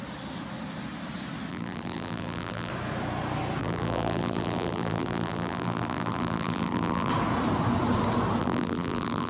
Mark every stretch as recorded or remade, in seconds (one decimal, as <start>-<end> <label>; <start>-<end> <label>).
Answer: 0.0-1.5 recorded; 1.5-2.7 remade; 2.7-3.6 recorded; 3.6-7.1 remade; 7.1-8.4 recorded; 8.4-9.3 remade